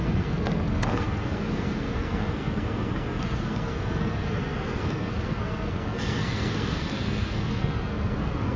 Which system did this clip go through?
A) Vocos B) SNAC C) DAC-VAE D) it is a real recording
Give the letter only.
B